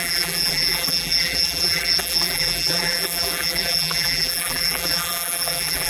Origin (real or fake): fake